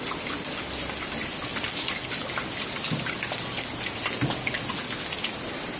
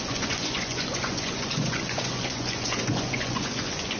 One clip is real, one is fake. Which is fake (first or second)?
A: second